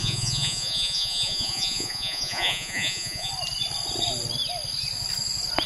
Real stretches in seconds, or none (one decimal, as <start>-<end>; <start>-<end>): 3.3-5.7